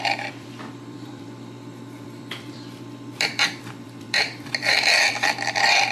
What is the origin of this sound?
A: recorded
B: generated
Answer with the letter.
B